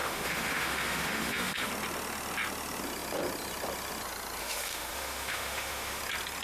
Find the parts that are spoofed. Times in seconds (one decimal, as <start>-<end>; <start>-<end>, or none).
0.0-1.7; 4.4-6.0